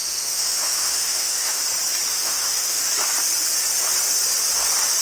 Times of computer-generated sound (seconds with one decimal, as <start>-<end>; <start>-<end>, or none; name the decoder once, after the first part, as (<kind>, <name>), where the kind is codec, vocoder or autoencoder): 0.0-1.6 (autoencoder, DAC-VAE); 2.1-2.8